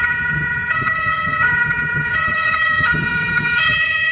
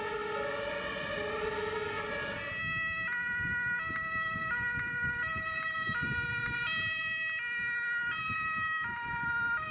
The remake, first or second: first